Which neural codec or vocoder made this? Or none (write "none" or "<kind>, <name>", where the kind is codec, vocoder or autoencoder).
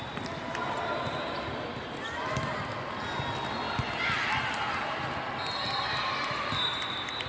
none